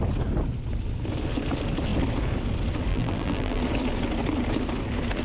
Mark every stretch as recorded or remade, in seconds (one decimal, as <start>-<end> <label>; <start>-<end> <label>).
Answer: 0.0-2.9 recorded; 2.9-3.6 remade; 3.6-5.2 recorded